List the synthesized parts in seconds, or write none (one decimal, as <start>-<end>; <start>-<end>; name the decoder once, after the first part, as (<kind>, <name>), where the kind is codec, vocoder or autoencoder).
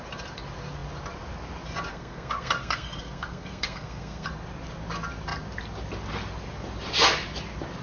1.9-4.3 (codec, SNAC)